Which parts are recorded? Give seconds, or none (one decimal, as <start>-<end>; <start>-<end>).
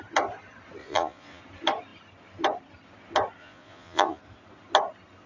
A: 0.0-0.8; 1.4-3.4; 4.2-5.3